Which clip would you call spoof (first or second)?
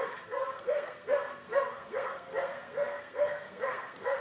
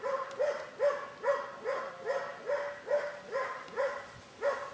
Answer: first